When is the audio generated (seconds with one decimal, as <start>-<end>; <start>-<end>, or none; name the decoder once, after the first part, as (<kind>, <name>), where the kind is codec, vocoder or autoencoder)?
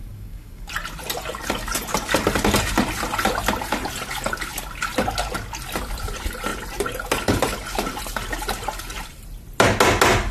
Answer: 0.0-0.7 (codec, DAC)